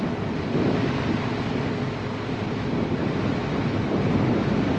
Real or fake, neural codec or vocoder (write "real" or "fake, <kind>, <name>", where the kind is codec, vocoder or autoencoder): real